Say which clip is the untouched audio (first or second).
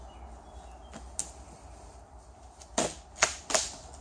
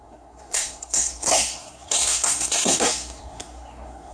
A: first